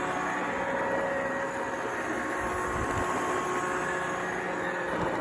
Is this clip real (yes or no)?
yes